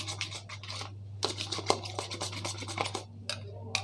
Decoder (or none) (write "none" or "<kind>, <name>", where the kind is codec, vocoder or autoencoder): none